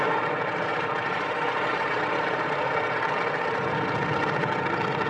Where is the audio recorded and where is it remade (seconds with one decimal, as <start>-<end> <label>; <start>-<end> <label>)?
0.0-0.7 recorded; 0.7-3.1 remade; 3.1-5.1 recorded